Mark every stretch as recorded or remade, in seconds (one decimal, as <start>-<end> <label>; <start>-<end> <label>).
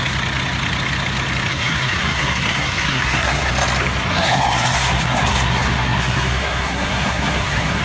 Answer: 0.0-1.5 recorded; 1.5-3.5 remade; 3.5-4.1 recorded; 4.1-7.8 remade